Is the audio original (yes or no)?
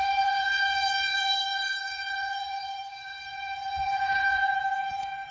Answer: no